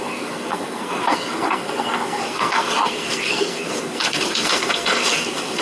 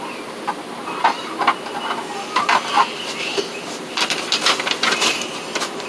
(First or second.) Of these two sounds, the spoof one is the first